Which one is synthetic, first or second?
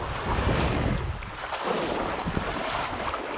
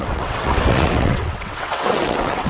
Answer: second